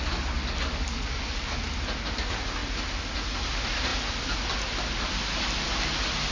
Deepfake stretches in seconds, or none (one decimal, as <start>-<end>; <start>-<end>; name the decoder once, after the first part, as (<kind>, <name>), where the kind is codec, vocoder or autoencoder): 0.4-1.6 (codec, DAC)